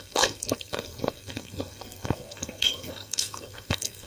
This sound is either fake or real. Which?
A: fake